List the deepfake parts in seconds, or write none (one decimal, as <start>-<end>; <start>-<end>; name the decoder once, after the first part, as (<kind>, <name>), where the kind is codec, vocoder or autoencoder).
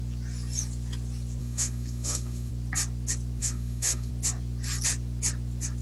1.4-2.5 (autoencoder, DAC-VAE); 3.4-4.1